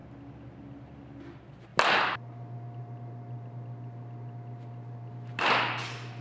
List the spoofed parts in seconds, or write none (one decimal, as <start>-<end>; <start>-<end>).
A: none